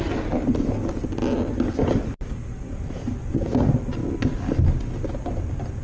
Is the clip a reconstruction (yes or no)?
no